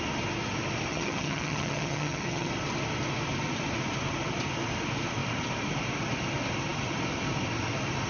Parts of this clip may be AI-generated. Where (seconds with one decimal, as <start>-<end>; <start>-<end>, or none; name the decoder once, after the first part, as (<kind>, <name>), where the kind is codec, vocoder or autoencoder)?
0.9-2.5 (vocoder, HiFi-GAN)

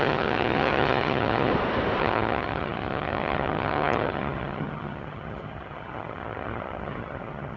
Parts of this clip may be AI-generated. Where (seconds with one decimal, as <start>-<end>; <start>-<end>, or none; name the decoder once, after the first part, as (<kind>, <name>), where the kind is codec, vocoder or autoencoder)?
0.0-1.5 (vocoder, HiFi-GAN); 2.0-7.6

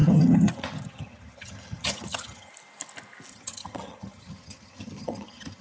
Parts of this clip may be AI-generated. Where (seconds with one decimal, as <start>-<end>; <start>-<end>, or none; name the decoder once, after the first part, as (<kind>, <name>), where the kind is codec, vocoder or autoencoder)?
0.0-2.5 (vocoder, HiFi-GAN); 3.3-5.6

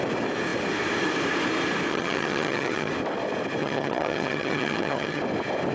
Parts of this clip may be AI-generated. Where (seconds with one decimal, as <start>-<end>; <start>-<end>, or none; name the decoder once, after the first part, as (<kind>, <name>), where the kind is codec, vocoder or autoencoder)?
1.9-2.9 (vocoder, HiFi-GAN); 3.6-5.2

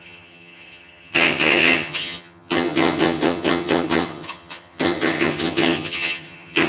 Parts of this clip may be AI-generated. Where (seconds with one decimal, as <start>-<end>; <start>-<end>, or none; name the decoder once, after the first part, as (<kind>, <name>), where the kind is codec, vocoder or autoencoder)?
0.0-6.7 (vocoder, HiFi-GAN)

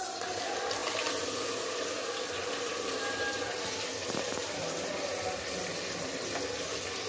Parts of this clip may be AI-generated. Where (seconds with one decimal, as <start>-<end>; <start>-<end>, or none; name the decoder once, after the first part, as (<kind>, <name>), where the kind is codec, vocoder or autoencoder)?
none